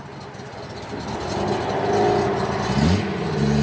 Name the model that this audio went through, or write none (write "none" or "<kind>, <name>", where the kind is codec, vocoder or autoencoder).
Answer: none